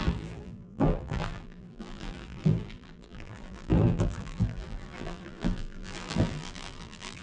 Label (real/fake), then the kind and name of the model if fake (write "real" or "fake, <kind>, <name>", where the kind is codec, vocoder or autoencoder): fake, vocoder, BigVGAN v2